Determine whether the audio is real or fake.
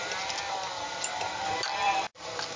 fake